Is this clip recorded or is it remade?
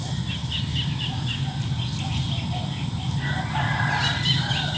remade